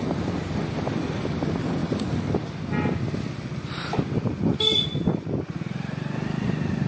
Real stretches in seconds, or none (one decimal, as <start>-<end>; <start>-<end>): 0.0-6.9